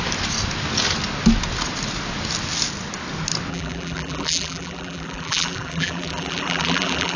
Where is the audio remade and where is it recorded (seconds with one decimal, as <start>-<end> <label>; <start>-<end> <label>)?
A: 0.0-3.5 recorded; 3.5-7.2 remade